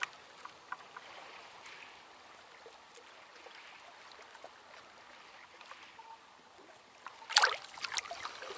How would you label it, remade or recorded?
recorded